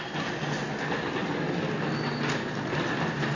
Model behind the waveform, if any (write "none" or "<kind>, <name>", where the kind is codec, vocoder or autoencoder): none